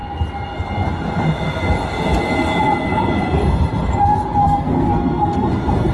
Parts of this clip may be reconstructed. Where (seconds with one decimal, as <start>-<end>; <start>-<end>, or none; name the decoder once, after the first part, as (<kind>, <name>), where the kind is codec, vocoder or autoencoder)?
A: 4.4-5.5 (codec, SNAC)